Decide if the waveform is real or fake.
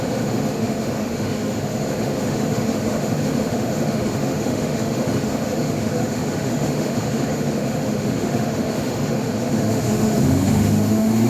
fake